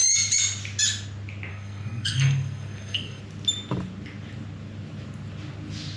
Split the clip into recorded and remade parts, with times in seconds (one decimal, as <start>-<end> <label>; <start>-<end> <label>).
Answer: 0.0-1.5 recorded; 1.5-3.2 remade; 3.2-6.0 recorded

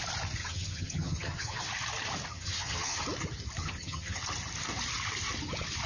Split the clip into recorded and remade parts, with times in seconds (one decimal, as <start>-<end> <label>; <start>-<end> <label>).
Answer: 0.0-0.4 recorded; 0.4-1.6 remade; 1.6-2.3 recorded; 2.3-3.0 remade; 3.0-3.6 recorded; 3.6-4.2 remade; 4.2-5.9 recorded

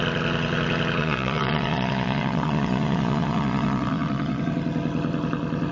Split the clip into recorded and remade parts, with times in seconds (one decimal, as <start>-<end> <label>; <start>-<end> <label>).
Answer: 0.0-1.0 recorded; 1.0-4.4 remade; 4.4-5.7 recorded

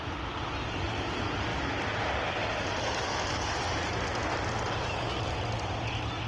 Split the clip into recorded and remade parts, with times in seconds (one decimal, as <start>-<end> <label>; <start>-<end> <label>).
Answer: 0.0-6.3 recorded

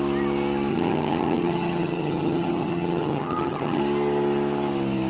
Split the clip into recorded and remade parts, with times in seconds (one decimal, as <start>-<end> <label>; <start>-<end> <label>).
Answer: 0.0-0.7 recorded; 0.7-3.8 remade; 3.8-5.1 recorded

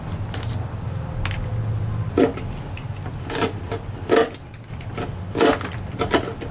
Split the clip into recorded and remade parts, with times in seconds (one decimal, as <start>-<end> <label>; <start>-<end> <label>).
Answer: 0.0-6.5 recorded

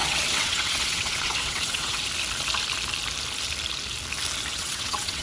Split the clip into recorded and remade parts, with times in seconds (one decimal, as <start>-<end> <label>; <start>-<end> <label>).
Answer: 0.0-2.0 remade; 2.0-4.6 recorded; 4.6-5.2 remade